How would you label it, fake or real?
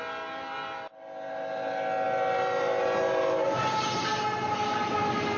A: real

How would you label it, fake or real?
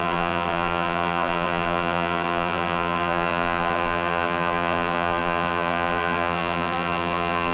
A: fake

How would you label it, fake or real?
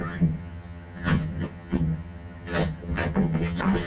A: fake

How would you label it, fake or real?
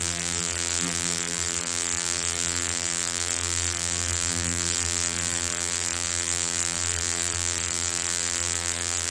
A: fake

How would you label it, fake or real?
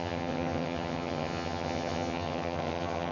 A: fake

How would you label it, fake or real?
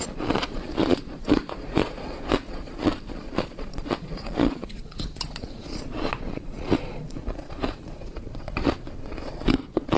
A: fake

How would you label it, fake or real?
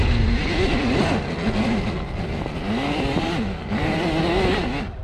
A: real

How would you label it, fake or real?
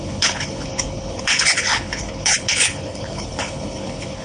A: fake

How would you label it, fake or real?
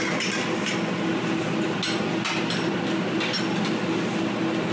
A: real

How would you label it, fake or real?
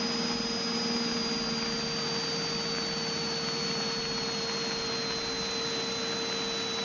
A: real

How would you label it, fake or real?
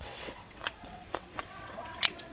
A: fake